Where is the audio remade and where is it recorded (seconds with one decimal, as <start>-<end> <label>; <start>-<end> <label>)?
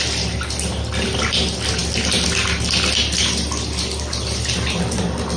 0.0-5.4 recorded